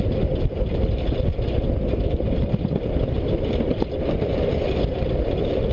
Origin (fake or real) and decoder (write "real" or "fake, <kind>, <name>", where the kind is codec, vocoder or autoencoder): real